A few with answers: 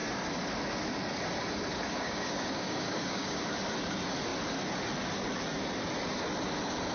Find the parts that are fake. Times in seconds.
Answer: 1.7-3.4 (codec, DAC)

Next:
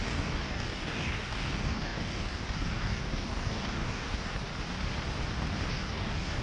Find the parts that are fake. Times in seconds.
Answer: 0.0-4.5 (codec, DAC); 5.7-6.4

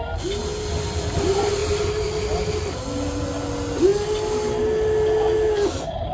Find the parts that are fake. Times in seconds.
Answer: none

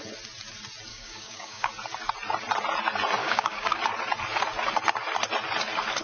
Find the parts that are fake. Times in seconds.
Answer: 0.9-1.7 (codec, DAC); 3.2-3.8

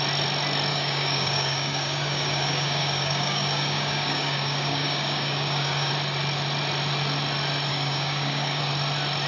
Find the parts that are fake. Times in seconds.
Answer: 0.7-5.9 (codec, DAC); 7.7-8.6

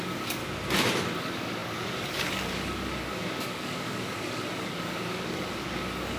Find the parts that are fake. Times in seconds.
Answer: 0.0-0.4 (codec, DAC); 1.2-6.2